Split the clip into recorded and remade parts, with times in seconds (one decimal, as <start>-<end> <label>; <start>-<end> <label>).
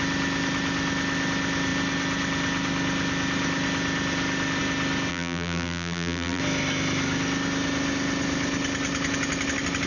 0.0-5.1 recorded; 5.1-6.4 remade; 6.4-9.9 recorded